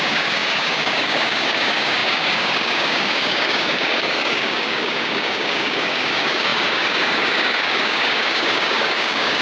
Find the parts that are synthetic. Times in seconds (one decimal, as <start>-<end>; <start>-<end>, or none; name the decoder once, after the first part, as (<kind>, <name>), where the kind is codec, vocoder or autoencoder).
0.0-9.4 (codec, DAC)